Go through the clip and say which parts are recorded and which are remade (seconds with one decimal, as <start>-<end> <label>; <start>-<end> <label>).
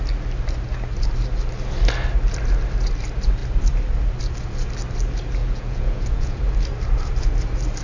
0.0-5.4 recorded; 5.4-6.4 remade; 6.4-7.8 recorded